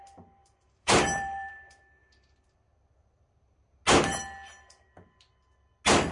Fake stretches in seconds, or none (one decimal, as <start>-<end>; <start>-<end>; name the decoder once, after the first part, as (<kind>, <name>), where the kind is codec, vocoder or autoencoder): 0.4-1.5 (vocoder, BigVGAN v2)